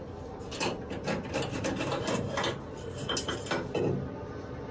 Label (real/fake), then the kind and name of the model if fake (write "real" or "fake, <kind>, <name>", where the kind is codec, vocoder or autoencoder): real